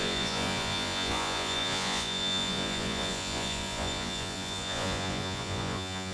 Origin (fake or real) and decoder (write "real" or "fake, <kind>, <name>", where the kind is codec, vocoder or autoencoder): fake, vocoder, Vocos